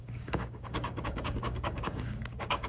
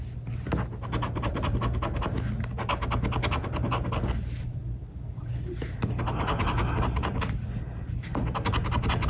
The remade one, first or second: first